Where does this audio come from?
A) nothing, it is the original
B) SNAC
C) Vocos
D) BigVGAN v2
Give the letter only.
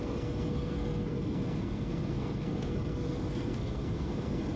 B